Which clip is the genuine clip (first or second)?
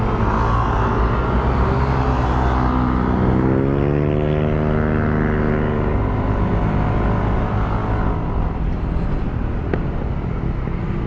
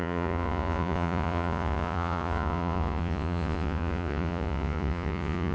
first